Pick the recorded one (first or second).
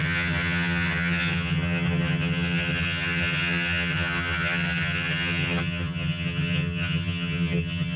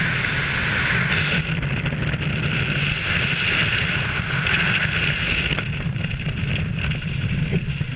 second